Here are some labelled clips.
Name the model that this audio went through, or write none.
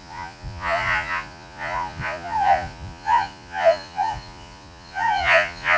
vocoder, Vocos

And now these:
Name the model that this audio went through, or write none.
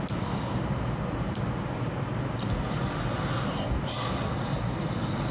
none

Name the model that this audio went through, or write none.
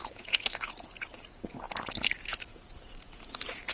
vocoder, Vocos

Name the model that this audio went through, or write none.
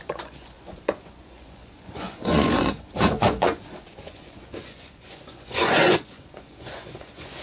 vocoder, Vocos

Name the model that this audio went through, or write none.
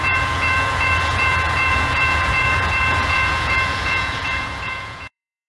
vocoder, Vocos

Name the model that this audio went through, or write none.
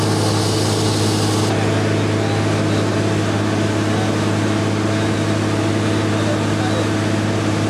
none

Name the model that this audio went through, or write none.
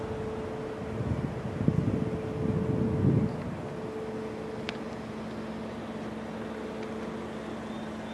none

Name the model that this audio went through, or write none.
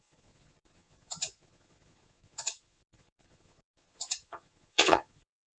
vocoder, Vocos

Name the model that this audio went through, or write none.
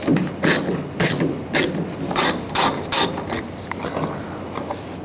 none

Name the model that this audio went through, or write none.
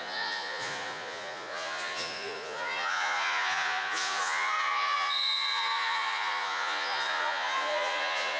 vocoder, Vocos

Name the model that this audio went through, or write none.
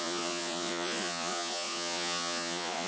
vocoder, Vocos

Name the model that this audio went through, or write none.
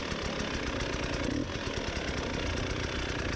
none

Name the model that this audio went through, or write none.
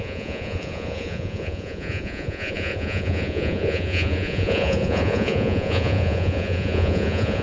vocoder, Vocos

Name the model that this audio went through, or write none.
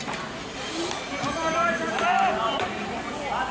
none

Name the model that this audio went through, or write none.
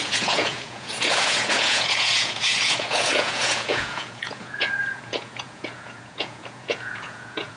vocoder, Vocos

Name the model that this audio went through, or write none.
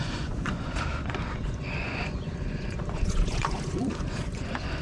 vocoder, Vocos